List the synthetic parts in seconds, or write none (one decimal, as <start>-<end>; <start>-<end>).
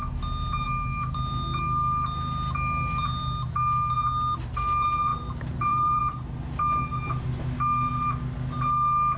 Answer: 5.1-6.0